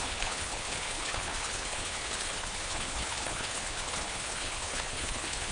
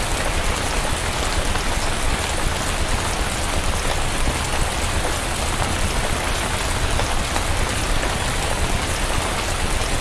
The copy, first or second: first